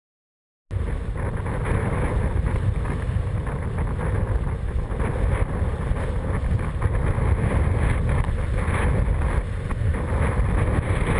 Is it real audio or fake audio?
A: real